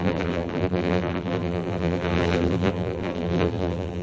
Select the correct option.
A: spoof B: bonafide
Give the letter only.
A